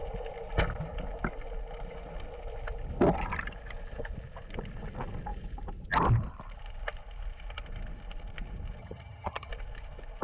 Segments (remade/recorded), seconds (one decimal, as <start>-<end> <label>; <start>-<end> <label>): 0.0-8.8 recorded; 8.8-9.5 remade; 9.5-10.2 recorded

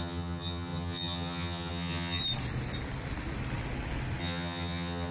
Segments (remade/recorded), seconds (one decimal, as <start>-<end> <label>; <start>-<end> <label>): 0.0-2.2 remade; 2.2-4.2 recorded; 4.2-5.1 remade

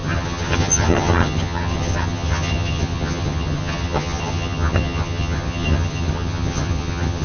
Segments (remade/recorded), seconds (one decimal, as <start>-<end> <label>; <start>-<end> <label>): 0.0-7.2 remade

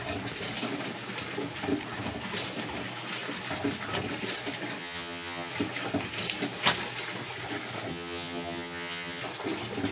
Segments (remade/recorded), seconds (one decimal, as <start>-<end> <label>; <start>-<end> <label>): 0.0-4.8 recorded; 4.8-5.5 remade; 5.5-7.9 recorded; 7.9-9.2 remade; 9.2-9.9 recorded